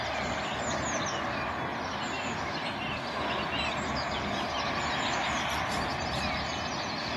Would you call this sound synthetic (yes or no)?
no